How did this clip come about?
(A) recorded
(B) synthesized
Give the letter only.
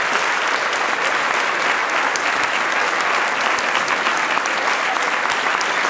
A